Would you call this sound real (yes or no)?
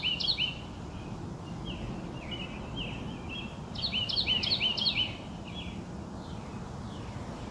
yes